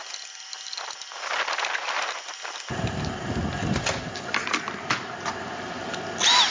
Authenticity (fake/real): real